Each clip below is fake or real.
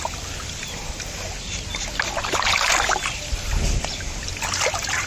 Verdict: real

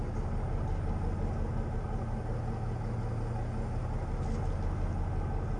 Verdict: real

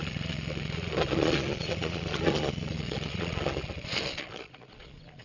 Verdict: fake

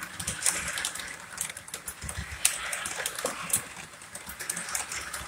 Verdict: real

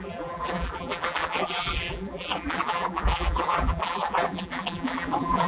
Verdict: fake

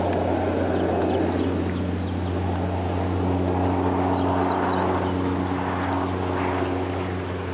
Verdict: real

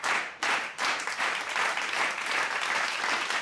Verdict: fake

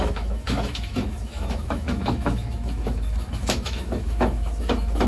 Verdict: fake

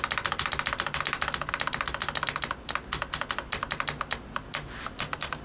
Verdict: real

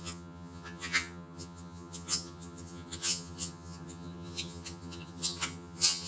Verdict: fake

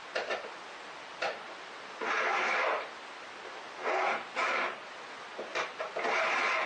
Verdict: real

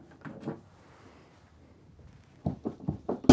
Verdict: real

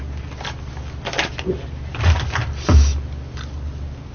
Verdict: real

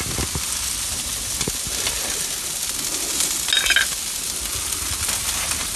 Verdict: real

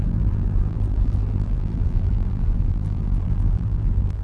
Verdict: fake